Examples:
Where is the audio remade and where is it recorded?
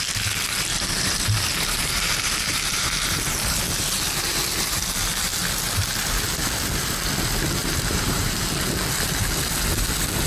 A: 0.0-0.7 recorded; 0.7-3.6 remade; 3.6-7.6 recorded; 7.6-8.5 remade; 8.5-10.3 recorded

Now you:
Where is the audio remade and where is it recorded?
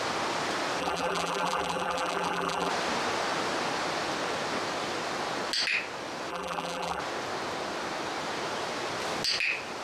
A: 0.0-0.8 recorded; 0.8-2.7 remade; 2.7-6.3 recorded; 6.3-7.0 remade; 7.0-9.8 recorded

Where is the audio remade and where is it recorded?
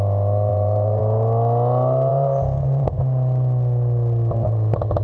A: 0.0-0.5 recorded; 0.5-1.0 remade; 1.0-2.1 recorded; 2.1-3.0 remade; 3.0-5.0 recorded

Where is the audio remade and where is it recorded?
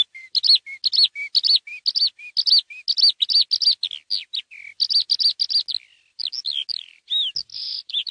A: 0.0-7.5 recorded; 7.5-8.1 remade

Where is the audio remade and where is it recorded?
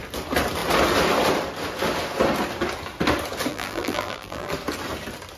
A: 0.0-3.5 recorded; 3.5-4.5 remade; 4.5-5.4 recorded